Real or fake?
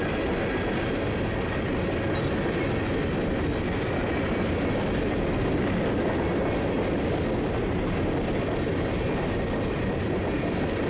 real